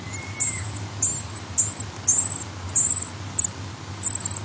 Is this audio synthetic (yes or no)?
no